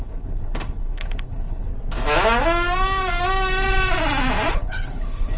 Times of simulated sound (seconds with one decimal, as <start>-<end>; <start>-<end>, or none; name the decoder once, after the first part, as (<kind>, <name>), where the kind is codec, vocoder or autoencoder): 0.0-1.7 (codec, HILCodec); 4.5-5.4